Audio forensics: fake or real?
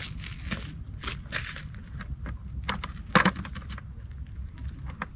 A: real